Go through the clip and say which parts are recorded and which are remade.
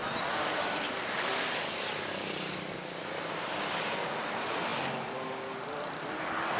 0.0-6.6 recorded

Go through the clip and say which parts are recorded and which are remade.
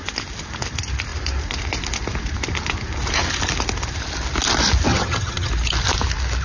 0.0-4.9 recorded; 4.9-5.5 remade; 5.5-6.4 recorded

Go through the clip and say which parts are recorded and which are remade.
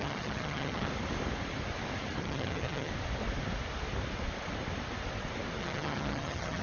0.0-0.9 remade; 0.9-2.2 recorded; 2.2-2.9 remade; 2.9-5.6 recorded; 5.6-6.6 remade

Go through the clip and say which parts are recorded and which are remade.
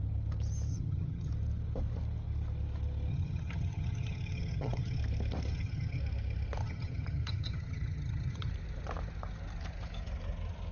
0.0-0.7 recorded; 0.7-1.3 remade; 1.3-3.1 recorded; 3.1-5.0 remade; 5.0-5.5 recorded; 5.5-6.0 remade; 6.0-6.6 recorded; 6.6-8.5 remade; 8.5-10.7 recorded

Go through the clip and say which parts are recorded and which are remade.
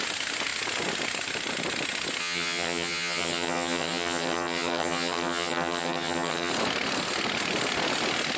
0.0-2.2 recorded; 2.2-6.5 remade; 6.5-8.4 recorded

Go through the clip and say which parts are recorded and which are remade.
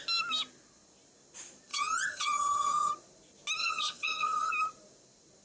0.0-1.7 recorded; 1.7-2.9 remade; 2.9-3.6 recorded; 3.6-4.5 remade; 4.5-5.4 recorded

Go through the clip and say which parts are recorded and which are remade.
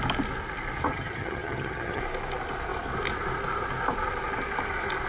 0.0-0.9 recorded; 0.9-2.0 remade; 2.0-5.1 recorded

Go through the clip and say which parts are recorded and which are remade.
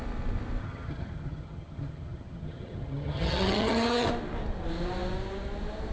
0.0-0.6 recorded; 0.6-4.1 remade; 4.1-5.9 recorded